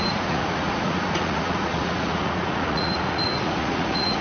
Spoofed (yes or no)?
yes